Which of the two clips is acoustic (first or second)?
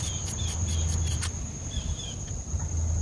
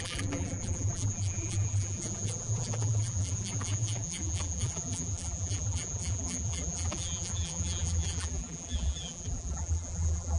first